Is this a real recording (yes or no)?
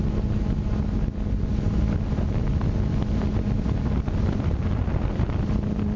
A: yes